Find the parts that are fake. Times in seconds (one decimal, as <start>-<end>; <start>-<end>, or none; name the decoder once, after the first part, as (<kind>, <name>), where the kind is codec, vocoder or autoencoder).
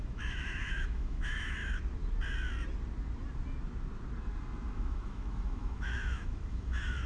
0.0-1.6 (autoencoder, DAC-VAE); 4.7-7.1